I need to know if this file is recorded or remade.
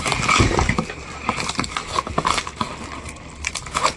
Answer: remade